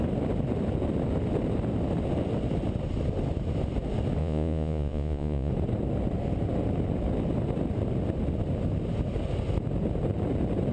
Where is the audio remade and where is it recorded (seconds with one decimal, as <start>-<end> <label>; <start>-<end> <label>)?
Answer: 0.0-4.2 recorded; 4.2-5.5 remade; 5.5-10.7 recorded